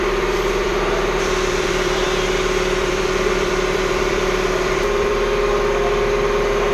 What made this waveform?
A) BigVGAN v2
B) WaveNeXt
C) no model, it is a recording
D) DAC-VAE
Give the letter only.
A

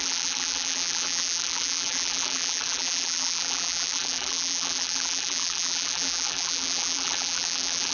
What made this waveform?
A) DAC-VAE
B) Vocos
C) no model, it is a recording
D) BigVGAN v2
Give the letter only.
D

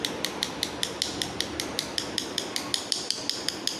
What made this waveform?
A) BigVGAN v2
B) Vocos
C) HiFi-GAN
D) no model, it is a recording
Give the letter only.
D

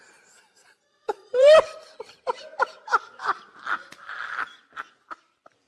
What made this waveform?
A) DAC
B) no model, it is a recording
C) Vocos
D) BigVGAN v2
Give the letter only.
D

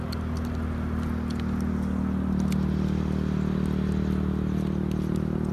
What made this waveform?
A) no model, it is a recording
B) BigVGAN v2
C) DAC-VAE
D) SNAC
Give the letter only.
A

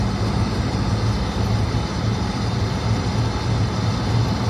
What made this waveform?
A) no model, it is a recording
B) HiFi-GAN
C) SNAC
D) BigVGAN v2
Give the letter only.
A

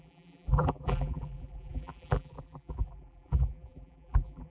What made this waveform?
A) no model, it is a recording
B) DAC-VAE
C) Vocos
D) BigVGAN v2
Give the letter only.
D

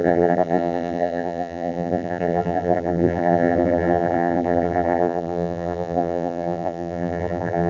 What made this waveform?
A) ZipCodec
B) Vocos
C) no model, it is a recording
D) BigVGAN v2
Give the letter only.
D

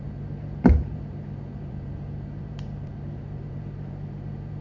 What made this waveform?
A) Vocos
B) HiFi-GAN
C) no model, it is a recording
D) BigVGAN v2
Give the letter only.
D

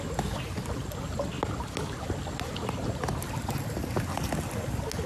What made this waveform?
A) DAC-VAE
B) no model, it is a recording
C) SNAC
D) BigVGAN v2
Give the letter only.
B